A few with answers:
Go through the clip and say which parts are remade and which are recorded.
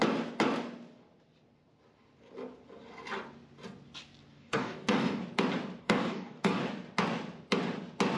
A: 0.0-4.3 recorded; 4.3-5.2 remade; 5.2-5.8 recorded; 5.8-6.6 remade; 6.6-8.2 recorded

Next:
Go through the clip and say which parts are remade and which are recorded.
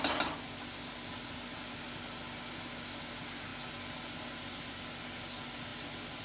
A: 0.0-6.2 recorded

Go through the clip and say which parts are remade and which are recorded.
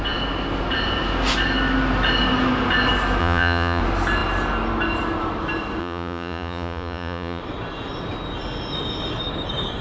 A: 0.0-3.2 recorded; 3.2-3.8 remade; 3.8-5.8 recorded; 5.8-7.4 remade; 7.4-9.8 recorded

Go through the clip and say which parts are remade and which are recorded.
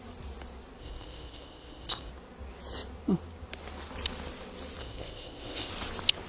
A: 0.0-0.8 recorded; 0.8-2.1 remade; 2.1-4.8 recorded; 4.8-5.7 remade; 5.7-6.3 recorded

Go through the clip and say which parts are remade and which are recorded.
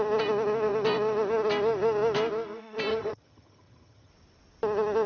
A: 0.0-2.9 recorded; 2.9-4.1 remade; 4.1-5.1 recorded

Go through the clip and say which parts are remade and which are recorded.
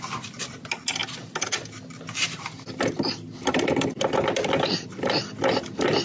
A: 0.0-6.0 recorded